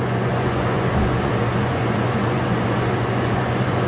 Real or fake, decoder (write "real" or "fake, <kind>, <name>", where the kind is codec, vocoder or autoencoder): fake, vocoder, Vocos